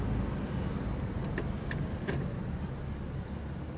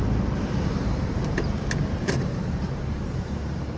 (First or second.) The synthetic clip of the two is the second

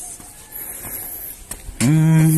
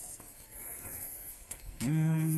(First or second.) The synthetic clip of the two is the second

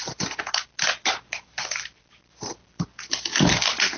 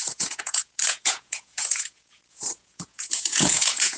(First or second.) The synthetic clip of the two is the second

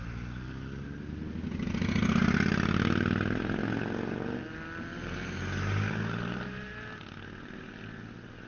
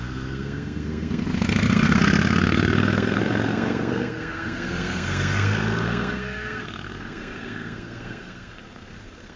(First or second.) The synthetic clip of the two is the second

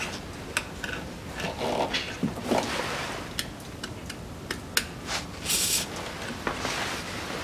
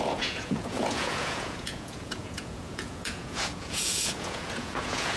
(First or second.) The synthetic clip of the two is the second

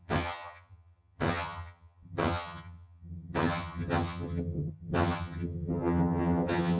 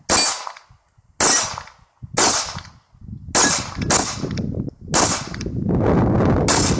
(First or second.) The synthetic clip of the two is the first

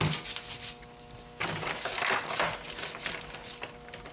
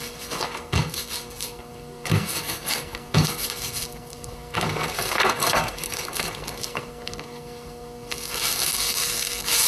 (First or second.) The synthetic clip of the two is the second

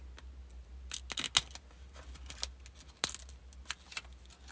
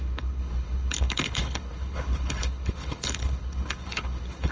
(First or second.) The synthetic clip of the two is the second